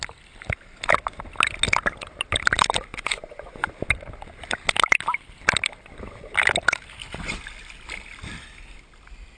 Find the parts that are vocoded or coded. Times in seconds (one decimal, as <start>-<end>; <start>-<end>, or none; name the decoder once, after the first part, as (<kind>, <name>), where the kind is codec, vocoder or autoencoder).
2.9-3.7 (vocoder, Vocos)